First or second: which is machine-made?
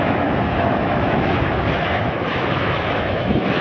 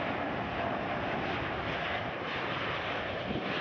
first